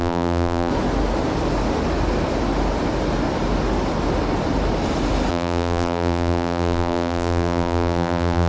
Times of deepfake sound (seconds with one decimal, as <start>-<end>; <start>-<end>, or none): 0.0-0.7; 5.3-8.5